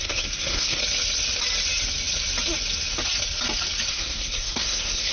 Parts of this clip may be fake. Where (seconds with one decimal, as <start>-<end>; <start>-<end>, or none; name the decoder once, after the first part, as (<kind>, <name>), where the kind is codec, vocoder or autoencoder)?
0.0-0.8 (codec, SNAC); 3.9-5.1